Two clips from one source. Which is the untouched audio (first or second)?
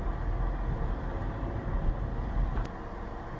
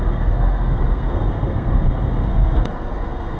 first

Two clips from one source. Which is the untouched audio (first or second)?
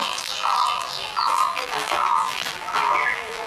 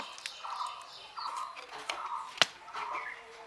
second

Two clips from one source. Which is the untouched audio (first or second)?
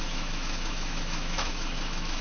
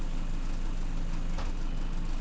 second